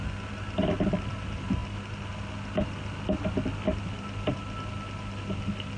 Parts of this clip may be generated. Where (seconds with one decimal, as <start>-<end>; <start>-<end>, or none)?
none